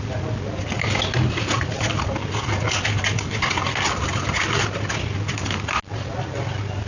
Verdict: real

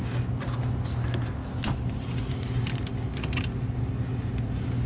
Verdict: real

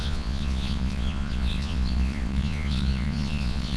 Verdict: fake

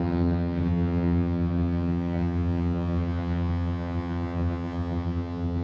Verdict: fake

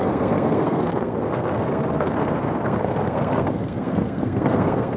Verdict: fake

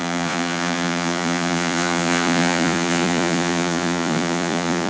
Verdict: fake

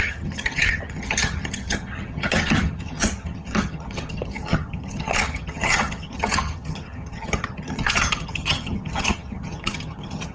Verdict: fake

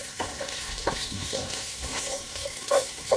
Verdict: fake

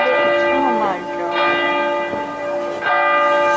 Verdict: real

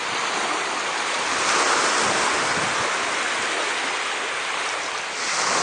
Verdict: real